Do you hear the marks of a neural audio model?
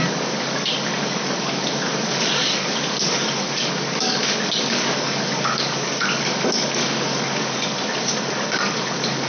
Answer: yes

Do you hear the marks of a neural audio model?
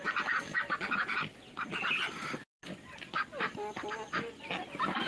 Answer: no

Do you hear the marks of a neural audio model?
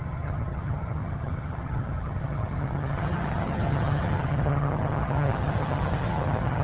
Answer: yes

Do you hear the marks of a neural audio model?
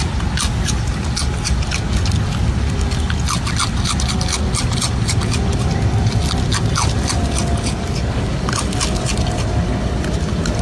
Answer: no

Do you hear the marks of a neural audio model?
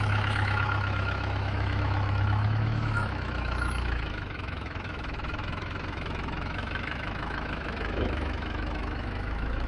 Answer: yes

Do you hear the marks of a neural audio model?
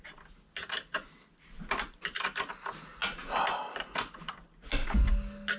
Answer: no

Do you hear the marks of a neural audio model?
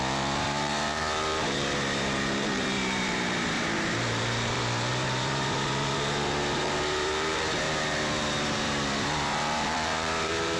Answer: yes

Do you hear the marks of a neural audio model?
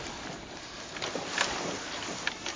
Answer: no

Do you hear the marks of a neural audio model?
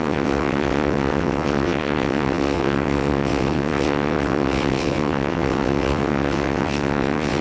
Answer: yes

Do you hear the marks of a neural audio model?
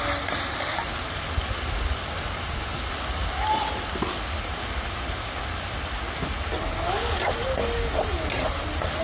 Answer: no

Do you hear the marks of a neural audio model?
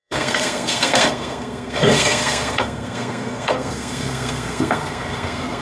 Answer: yes